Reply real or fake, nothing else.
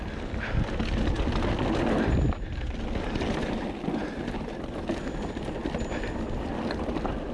real